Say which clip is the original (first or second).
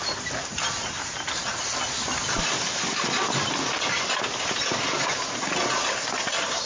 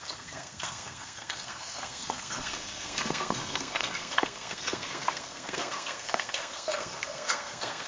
first